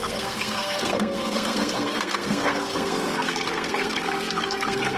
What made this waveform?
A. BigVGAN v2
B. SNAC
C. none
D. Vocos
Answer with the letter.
B